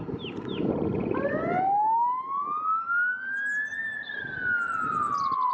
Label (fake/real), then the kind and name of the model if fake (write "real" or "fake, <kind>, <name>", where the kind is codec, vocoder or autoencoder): real